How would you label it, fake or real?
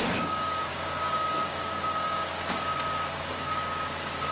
fake